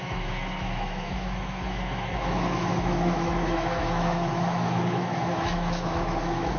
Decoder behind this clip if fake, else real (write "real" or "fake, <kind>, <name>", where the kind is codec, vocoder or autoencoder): fake, autoencoder, DAC-VAE